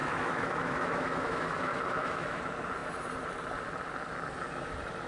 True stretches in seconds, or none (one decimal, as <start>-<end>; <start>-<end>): 2.4-5.1